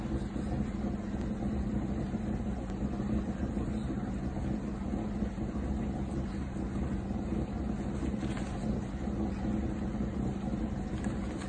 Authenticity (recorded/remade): recorded